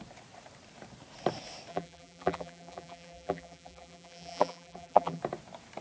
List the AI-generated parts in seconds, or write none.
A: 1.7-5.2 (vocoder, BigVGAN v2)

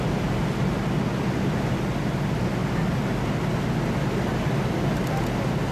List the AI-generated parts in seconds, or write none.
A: none

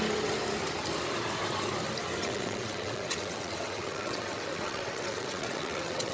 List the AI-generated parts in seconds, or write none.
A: 2.2-6.1 (vocoder, WaveNeXt)

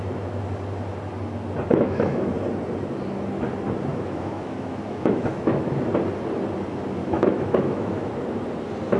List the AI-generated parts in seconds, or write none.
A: 1.7-2.3 (autoencoder, DAC-VAE); 3.9-5.7; 7.0-8.1

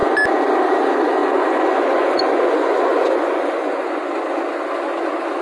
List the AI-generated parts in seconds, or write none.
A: 1.2-4.0 (vocoder, Vocos)

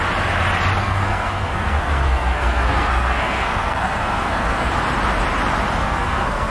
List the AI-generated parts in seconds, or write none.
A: 0.8-4.7 (codec, SNAC); 5.8-6.5

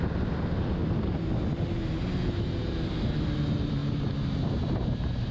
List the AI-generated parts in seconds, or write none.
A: 0.0-0.8 (vocoder, BigVGAN v2); 3.2-5.3